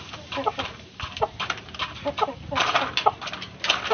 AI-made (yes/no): yes